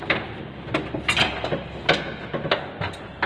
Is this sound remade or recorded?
recorded